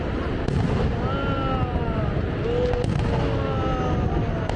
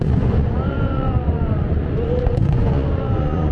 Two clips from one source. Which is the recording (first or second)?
first